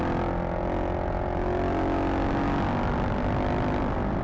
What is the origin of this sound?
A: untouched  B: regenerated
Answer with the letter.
A